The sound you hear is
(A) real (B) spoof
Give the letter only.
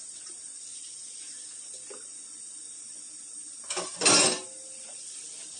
A